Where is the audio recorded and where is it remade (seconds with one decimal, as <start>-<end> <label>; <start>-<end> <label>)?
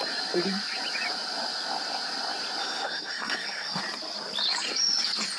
0.0-2.6 recorded; 2.6-3.8 remade; 3.8-5.4 recorded